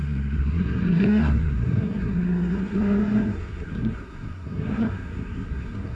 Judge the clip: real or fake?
fake